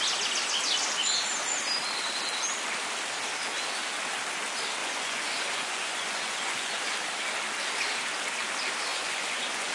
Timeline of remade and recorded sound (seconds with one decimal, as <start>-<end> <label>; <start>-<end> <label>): 0.0-4.8 recorded; 4.8-6.8 remade; 6.8-8.9 recorded; 8.9-9.7 remade